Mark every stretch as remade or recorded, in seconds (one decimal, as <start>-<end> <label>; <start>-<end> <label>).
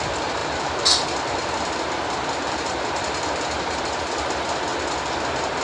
0.0-4.7 remade; 4.7-5.6 recorded